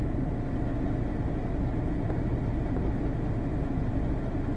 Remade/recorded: recorded